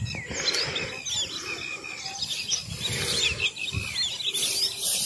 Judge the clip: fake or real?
real